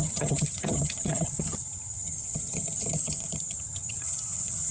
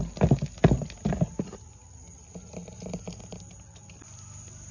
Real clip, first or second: second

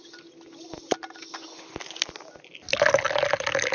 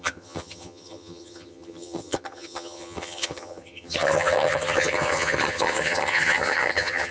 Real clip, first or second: first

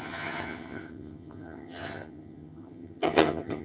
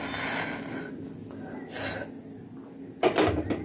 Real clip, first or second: second